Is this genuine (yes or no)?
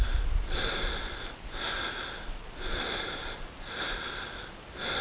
yes